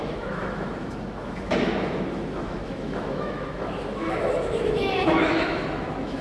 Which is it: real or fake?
fake